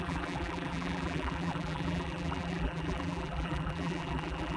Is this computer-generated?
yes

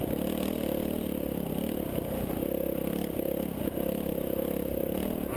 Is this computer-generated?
no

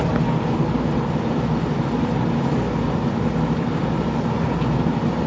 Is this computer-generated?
no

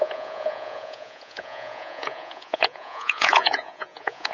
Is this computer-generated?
yes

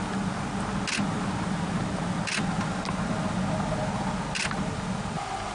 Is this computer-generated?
no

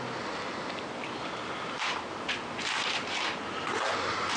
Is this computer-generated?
no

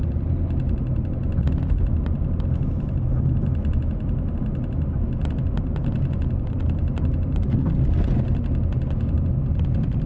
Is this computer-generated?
no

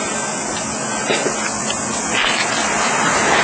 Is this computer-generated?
no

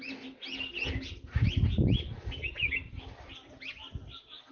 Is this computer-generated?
no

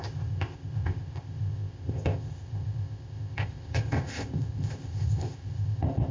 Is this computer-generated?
yes